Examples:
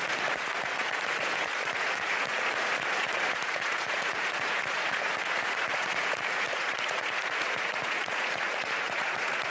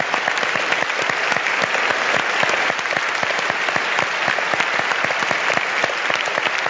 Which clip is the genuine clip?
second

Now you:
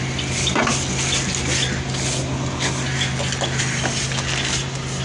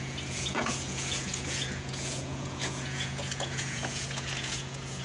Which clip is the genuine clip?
first